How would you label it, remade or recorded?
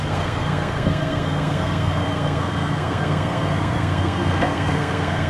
remade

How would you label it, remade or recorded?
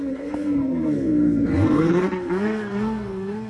remade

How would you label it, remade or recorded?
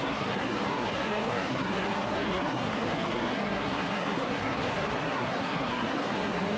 remade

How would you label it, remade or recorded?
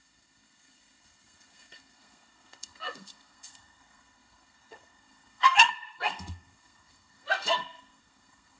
remade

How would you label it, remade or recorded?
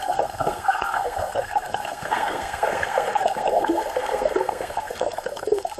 remade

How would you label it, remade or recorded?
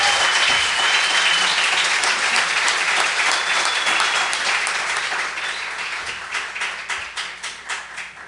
recorded